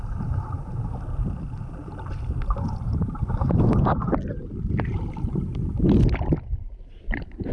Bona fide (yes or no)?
yes